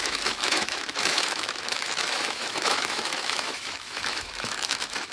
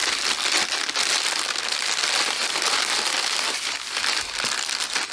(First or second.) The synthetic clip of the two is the first